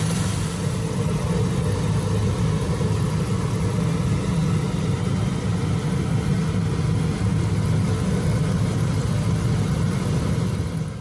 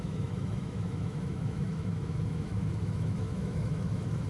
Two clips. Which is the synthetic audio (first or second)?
second